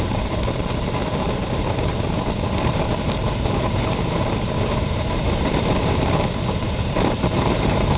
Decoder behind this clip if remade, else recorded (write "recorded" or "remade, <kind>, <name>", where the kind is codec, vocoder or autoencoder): remade, vocoder, BigVGAN v2